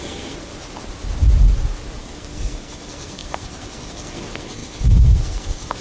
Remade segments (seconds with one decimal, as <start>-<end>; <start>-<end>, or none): 0.0-0.5; 2.0-5.8